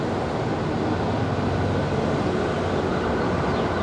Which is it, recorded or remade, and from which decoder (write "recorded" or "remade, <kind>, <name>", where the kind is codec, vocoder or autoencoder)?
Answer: recorded